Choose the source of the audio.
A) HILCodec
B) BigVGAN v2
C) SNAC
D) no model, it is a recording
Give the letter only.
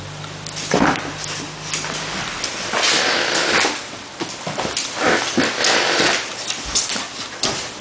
D